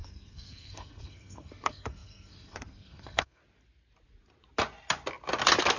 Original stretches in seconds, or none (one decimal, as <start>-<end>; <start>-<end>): 3.4-5.8